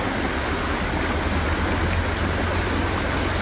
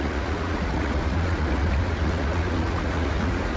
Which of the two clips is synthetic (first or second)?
second